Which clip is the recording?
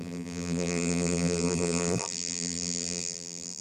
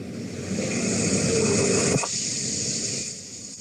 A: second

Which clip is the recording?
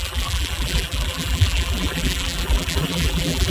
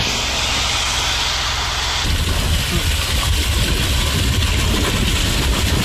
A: second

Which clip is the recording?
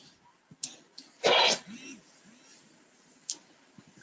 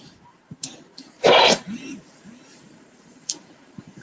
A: first